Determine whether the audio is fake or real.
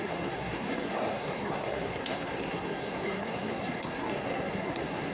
fake